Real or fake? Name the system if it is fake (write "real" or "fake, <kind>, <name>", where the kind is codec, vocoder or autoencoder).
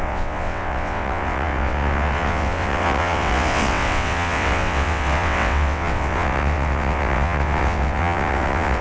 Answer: fake, vocoder, WaveNeXt